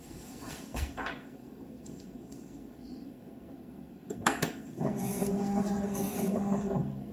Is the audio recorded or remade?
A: remade